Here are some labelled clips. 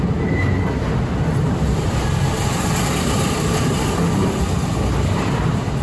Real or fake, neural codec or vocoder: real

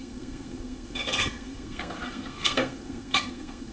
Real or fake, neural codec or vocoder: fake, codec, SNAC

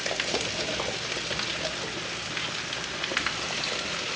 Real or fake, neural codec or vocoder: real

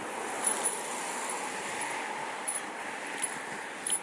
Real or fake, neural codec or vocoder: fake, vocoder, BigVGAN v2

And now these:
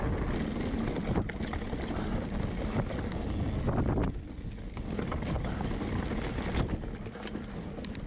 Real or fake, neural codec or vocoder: real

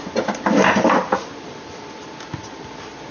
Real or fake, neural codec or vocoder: real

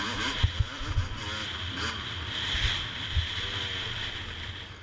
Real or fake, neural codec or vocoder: real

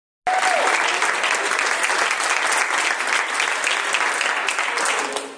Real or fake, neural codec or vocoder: real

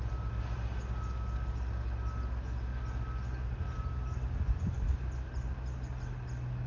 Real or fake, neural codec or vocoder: real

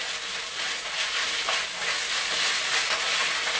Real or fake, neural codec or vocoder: real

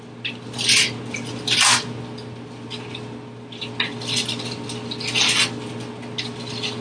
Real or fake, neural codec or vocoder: real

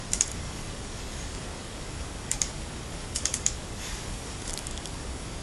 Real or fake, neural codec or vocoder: fake, codec, DAC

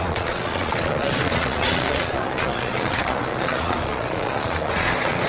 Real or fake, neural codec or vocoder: fake, vocoder, Vocos